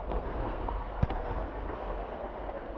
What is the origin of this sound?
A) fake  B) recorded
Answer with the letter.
A